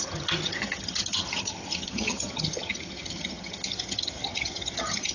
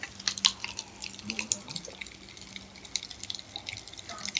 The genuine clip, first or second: second